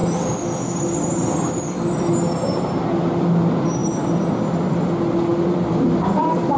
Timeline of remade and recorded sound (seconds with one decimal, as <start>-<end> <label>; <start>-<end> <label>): 0.0-3.8 recorded; 3.8-4.8 remade; 4.8-5.3 recorded; 5.3-6.6 remade

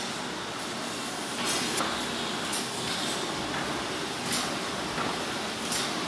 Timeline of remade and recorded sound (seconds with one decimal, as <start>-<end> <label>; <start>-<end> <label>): 0.0-6.1 recorded

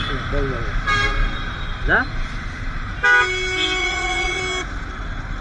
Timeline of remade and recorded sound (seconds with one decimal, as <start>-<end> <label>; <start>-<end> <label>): 0.0-3.8 recorded; 3.8-4.4 remade; 4.4-5.4 recorded

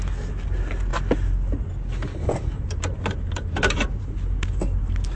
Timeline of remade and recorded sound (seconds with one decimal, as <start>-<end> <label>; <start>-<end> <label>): 0.0-5.1 recorded